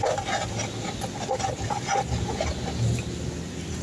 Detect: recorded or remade recorded